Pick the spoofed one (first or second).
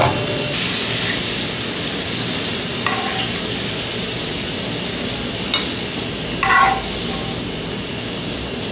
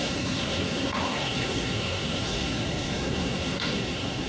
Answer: second